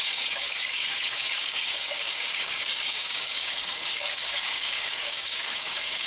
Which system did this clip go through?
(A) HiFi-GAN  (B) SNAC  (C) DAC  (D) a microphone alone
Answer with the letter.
C